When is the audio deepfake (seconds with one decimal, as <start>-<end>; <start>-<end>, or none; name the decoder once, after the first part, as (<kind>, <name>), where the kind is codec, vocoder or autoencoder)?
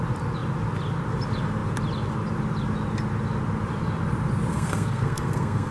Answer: 4.5-5.7 (codec, SNAC)